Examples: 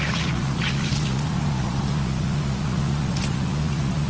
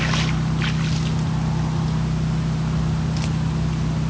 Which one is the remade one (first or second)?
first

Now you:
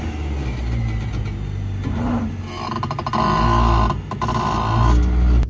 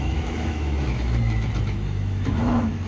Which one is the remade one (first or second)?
second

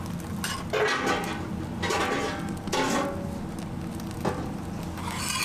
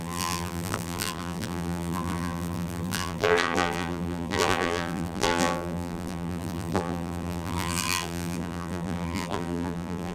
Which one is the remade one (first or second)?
second